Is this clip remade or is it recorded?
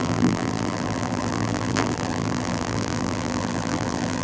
remade